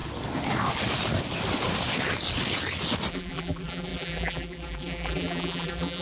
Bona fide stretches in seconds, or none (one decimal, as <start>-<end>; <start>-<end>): 0.0-3.1